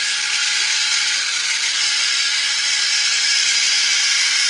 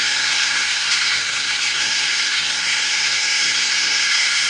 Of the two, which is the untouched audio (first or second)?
first